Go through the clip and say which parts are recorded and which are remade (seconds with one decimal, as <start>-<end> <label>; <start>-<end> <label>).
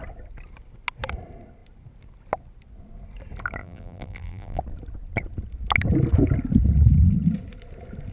0.0-3.6 recorded; 3.6-4.6 remade; 4.6-8.1 recorded